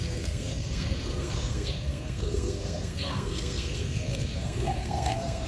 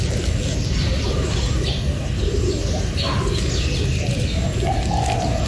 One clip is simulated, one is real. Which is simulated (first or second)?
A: first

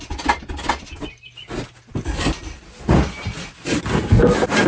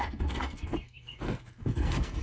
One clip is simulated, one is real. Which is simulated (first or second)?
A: second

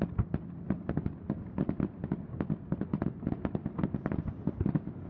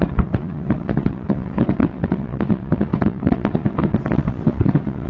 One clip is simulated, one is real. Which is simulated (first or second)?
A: second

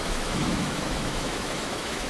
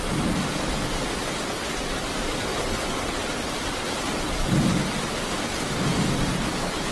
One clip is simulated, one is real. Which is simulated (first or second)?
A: first